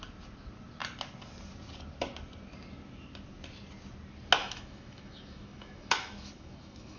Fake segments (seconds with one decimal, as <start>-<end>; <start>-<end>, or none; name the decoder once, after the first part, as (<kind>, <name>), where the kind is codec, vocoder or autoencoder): 4.4-7.0 (autoencoder, DAC-VAE)